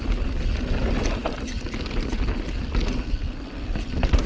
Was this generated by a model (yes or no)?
no